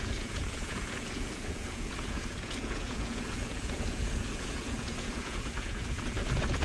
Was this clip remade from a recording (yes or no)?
yes